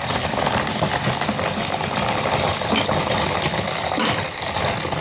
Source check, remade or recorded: recorded